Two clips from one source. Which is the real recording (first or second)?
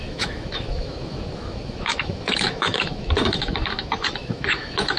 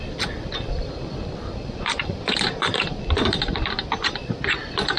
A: second